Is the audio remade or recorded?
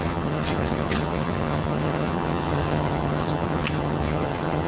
remade